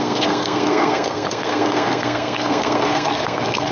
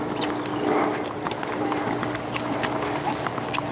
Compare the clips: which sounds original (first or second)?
second